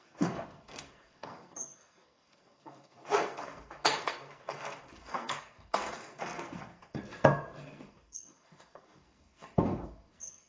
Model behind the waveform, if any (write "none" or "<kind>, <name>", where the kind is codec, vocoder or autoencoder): codec, SNAC